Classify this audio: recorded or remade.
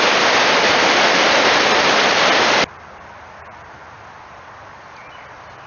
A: recorded